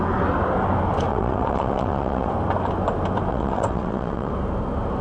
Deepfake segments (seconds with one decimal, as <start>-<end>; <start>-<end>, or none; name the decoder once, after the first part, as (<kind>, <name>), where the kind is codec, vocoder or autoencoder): 1.1-2.3 (vocoder, WaveNeXt); 3.3-4.3